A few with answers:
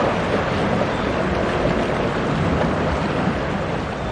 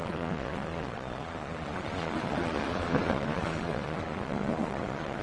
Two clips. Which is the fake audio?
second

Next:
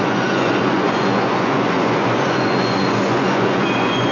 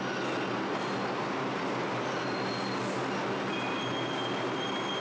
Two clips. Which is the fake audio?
first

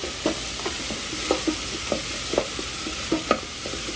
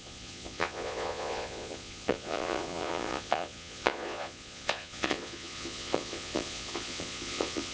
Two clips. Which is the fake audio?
second